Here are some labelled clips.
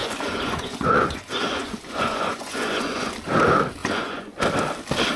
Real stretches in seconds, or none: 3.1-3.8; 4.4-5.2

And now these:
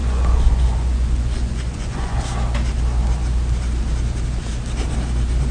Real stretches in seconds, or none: 2.2-5.5

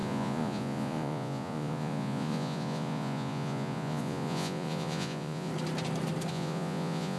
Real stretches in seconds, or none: 5.5-6.3

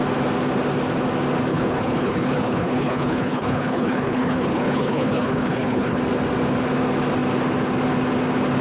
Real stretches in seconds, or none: 0.0-1.5; 6.0-8.6

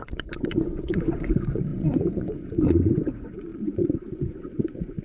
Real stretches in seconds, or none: none

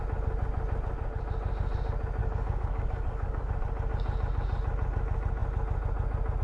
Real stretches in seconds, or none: 0.0-2.2; 3.5-6.4